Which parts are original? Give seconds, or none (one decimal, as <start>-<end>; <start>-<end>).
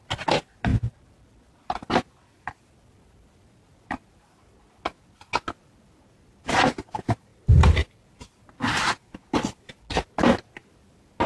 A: 0.0-11.3